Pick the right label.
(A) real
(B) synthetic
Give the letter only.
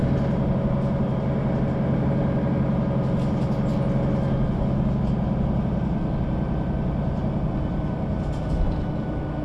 A